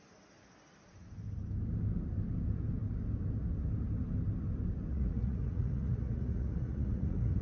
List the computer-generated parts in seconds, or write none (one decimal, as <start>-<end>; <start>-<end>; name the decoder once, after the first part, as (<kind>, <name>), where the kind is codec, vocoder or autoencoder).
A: 4.9-7.4 (vocoder, Vocos)

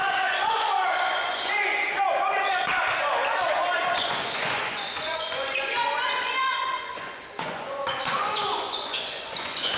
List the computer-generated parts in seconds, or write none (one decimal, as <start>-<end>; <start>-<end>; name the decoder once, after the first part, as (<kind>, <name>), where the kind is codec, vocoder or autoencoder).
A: 0.0-2.7 (vocoder, Vocos); 3.8-9.8